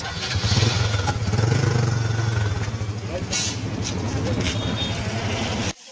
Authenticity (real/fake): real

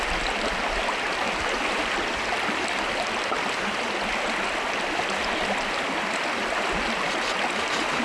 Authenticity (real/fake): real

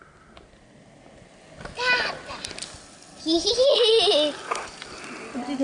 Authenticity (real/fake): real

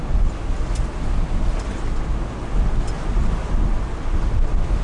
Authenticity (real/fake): real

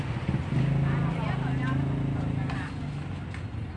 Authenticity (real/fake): real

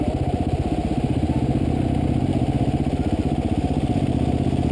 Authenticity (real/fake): real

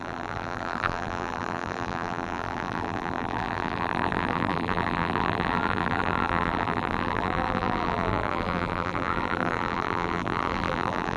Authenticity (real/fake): fake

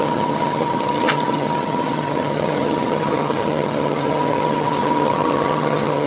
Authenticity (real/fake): fake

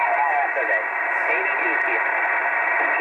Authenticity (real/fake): real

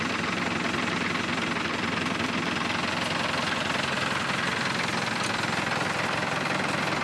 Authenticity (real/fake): real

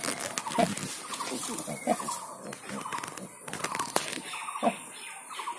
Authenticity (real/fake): real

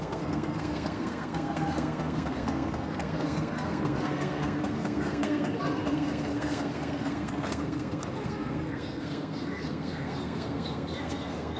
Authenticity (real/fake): fake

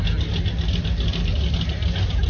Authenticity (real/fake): real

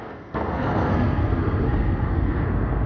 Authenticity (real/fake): fake